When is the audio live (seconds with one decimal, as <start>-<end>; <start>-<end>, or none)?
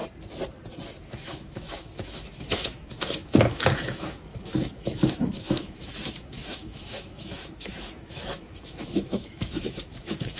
0.0-1.0